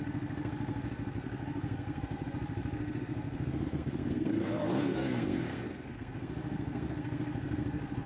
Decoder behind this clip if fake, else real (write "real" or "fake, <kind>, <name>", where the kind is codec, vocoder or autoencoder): fake, codec, SNAC